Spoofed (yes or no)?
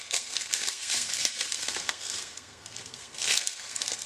yes